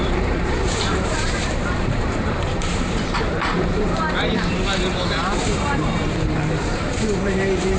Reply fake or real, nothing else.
fake